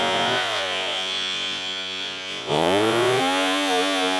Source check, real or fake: fake